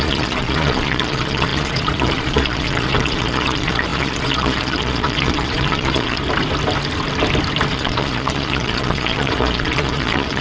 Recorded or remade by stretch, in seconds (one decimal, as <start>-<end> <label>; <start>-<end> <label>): 0.0-6.2 remade; 6.2-7.7 recorded; 7.7-10.4 remade